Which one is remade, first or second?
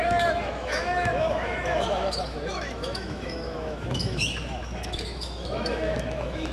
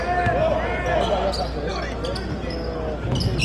first